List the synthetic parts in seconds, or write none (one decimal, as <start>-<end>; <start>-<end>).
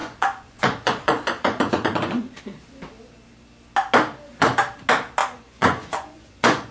0.0-2.4; 5.2-6.7